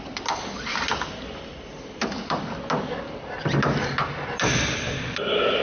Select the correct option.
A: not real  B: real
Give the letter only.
B